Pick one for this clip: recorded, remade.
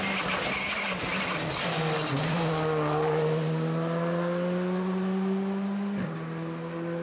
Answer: recorded